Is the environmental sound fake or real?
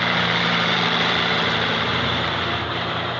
fake